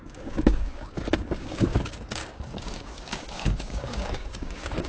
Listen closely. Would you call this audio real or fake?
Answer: fake